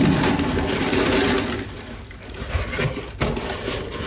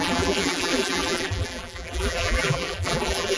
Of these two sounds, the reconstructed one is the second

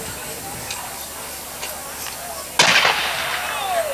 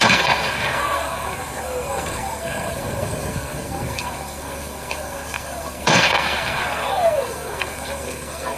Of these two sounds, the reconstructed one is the second